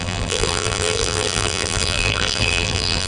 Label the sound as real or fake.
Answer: fake